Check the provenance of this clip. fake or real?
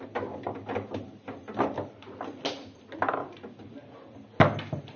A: real